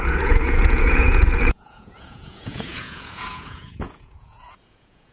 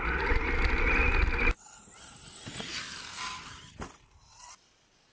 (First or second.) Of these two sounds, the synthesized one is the first